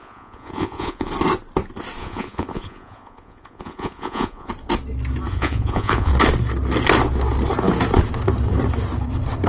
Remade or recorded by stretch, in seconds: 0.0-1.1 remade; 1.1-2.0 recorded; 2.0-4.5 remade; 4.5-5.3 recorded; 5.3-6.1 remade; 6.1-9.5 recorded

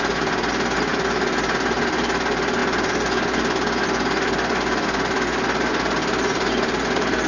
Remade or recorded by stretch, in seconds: 0.0-7.3 recorded